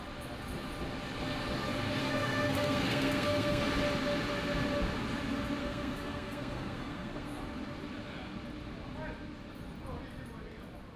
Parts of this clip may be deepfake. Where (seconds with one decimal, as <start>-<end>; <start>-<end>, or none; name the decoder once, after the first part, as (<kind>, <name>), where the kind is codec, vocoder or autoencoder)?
2.0-3.6 (codec, SNAC); 5.6-7.4